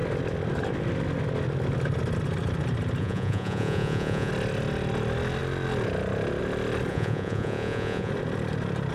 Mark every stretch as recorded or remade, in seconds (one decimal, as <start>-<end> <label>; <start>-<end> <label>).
0.0-3.0 recorded; 3.0-4.3 remade; 4.3-6.9 recorded; 6.9-8.1 remade; 8.1-8.9 recorded